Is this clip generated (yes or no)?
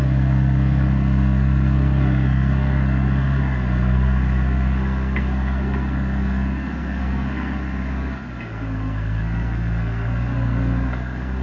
yes